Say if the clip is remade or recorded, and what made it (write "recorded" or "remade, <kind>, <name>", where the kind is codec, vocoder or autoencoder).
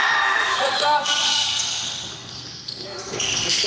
remade, codec, SNAC